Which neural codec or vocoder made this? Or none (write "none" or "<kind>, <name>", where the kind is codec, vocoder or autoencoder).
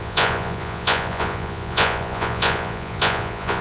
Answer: vocoder, Vocos